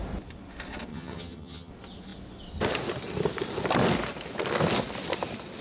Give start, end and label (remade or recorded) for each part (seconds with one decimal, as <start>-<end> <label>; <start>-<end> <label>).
0.0-0.9 recorded; 0.9-1.7 remade; 1.7-5.6 recorded